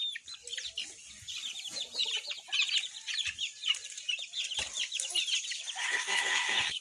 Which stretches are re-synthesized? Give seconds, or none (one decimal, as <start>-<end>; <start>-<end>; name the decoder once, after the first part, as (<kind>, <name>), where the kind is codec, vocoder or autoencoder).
5.8-6.8 (codec, SNAC)